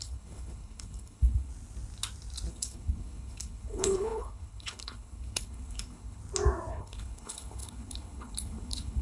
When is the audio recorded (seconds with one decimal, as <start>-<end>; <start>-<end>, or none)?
1.5-2.5; 6.2-6.7